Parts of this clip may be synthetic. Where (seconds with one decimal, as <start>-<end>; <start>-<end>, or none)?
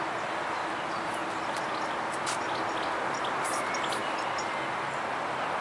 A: none